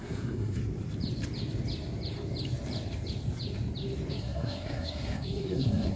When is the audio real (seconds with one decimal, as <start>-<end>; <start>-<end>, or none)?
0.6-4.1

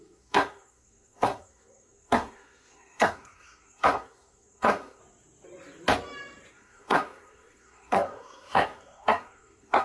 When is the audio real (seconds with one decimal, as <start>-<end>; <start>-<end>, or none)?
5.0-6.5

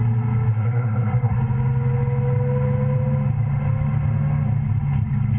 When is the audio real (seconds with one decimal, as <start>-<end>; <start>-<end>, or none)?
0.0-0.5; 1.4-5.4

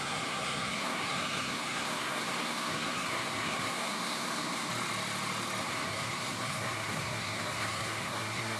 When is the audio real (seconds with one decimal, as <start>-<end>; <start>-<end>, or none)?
4.7-5.6

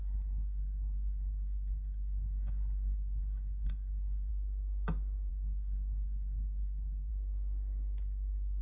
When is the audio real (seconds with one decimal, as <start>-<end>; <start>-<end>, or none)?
4.3-5.3; 7.1-8.6

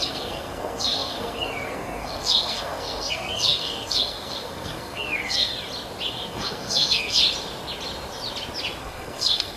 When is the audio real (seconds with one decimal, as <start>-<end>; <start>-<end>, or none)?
5.5-6.1; 7.2-8.8

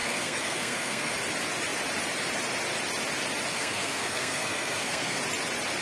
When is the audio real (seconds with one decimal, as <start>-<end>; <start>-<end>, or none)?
1.1-3.5; 5.2-5.8

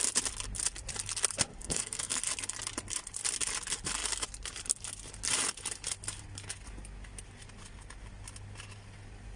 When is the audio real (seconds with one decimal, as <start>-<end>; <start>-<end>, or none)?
0.0-1.6; 2.2-9.4